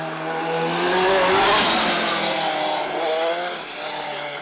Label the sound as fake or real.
real